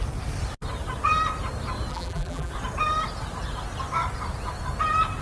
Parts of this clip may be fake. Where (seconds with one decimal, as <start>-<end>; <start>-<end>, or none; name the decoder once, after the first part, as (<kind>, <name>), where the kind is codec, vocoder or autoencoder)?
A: 1.9-2.5 (vocoder, BigVGAN v2)